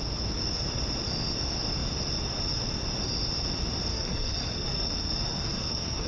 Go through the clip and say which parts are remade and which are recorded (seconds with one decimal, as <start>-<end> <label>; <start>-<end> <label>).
0.0-3.9 recorded; 3.9-6.1 remade